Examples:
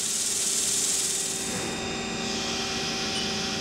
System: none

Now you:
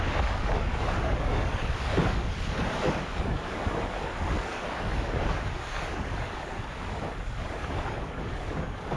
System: codec, DAC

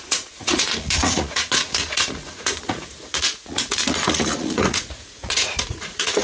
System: vocoder, Vocos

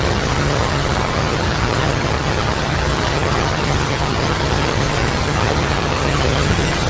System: vocoder, HiFi-GAN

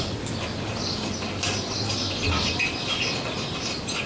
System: none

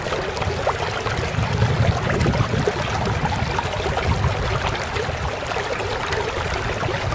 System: none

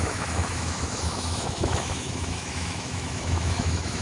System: autoencoder, DAC-VAE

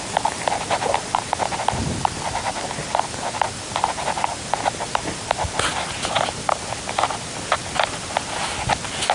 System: none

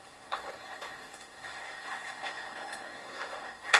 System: codec, SNAC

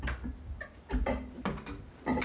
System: none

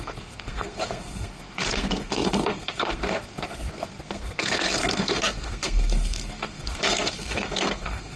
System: codec, SNAC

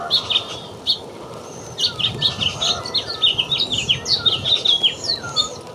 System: none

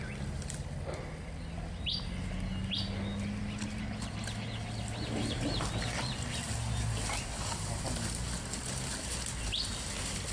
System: none